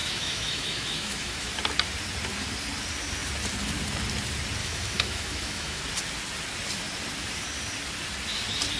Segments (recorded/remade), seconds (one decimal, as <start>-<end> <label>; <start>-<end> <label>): 0.0-1.5 remade; 1.5-4.6 recorded; 4.6-5.8 remade; 5.8-8.8 recorded